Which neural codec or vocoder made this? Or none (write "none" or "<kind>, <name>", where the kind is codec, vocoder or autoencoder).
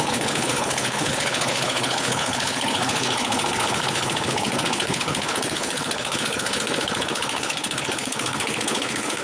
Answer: codec, HILCodec